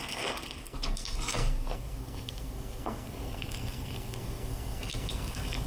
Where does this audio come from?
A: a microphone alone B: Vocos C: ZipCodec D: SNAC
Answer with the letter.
D